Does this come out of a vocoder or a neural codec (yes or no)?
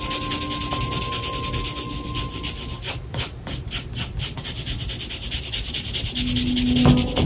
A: no